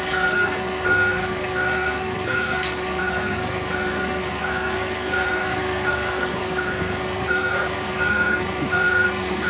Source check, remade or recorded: remade